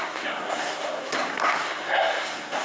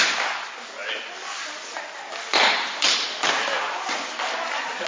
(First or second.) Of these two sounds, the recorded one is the second